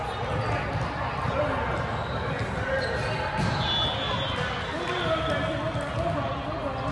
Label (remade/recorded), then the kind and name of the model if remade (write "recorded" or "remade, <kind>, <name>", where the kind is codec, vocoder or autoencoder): recorded